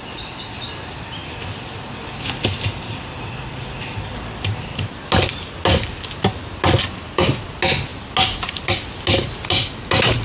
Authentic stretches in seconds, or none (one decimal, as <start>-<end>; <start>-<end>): 0.0-10.2